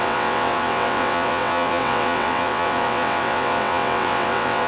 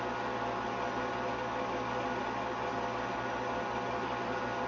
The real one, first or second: second